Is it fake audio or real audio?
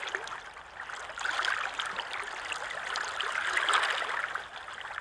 real